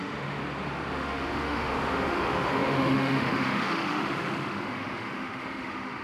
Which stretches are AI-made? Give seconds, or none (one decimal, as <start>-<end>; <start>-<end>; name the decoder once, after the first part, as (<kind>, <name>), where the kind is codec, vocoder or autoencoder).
0.0-0.4 (autoencoder, DAC-VAE); 0.9-6.0